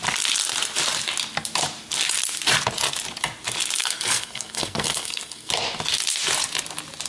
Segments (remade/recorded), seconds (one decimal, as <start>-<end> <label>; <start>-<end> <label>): 0.0-3.8 recorded; 3.8-5.5 remade; 5.5-7.1 recorded